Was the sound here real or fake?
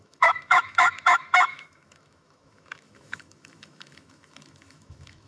fake